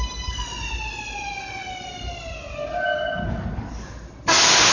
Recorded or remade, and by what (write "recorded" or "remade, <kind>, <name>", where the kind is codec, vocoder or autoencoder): recorded